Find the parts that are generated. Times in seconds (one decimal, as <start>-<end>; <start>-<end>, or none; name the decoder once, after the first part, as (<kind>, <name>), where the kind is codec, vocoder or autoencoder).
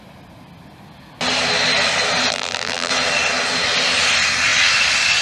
2.3-2.9 (vocoder, BigVGAN v2)